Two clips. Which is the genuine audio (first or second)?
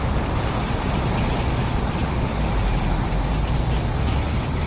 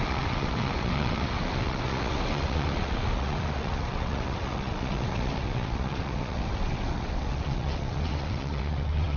first